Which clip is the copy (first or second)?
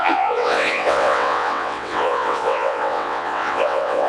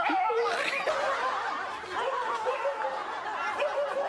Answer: first